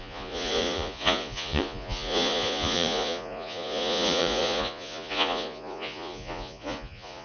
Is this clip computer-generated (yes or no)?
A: yes